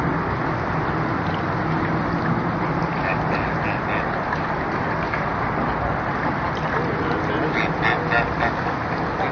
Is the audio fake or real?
real